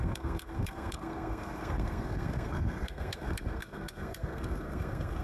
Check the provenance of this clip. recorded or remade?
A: remade